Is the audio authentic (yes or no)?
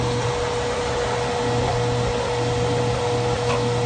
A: yes